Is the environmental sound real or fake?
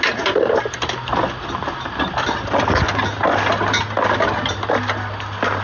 real